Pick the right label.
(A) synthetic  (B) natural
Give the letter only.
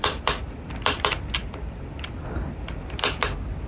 A